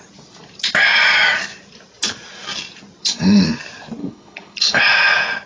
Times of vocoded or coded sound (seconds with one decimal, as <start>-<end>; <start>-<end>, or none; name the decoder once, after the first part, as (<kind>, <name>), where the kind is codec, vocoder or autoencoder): 3.0-3.6 (codec, HILCodec); 4.0-4.8